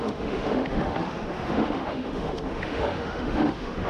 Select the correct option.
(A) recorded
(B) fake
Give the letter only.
B